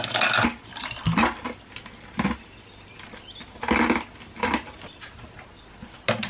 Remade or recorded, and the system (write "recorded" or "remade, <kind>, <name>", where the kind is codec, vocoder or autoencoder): recorded